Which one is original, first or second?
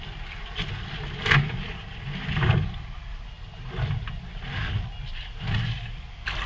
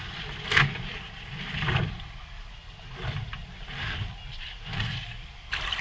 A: first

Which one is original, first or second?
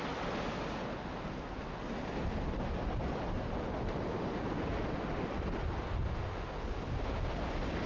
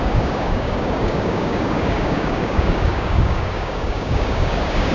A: first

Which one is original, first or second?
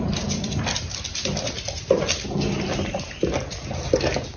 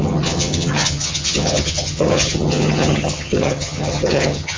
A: first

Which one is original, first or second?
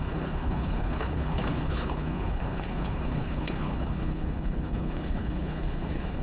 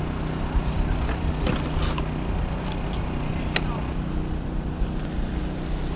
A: second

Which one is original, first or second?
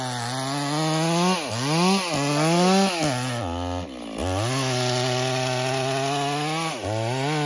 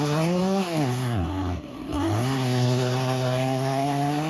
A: first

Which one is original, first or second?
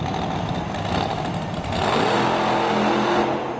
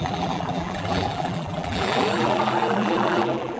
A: first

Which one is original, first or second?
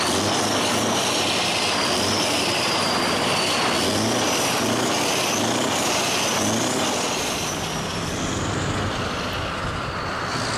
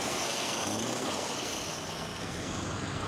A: first